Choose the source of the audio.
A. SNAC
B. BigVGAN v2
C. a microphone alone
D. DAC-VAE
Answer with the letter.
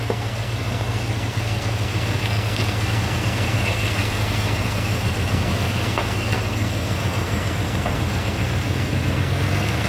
A